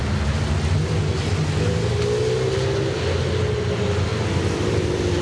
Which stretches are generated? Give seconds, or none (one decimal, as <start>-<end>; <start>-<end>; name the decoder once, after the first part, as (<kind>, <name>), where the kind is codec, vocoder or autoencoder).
none